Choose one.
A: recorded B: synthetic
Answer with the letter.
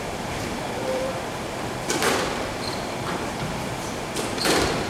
B